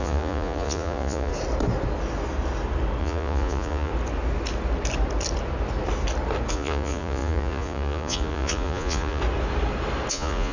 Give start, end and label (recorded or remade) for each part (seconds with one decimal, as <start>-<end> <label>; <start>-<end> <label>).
0.0-1.3 remade; 1.3-3.0 recorded; 3.0-3.9 remade; 3.9-6.5 recorded; 6.5-9.2 remade; 9.2-10.1 recorded; 10.1-10.5 remade